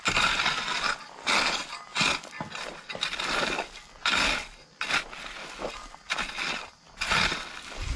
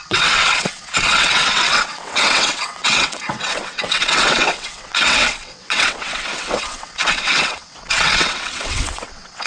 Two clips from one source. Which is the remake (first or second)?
second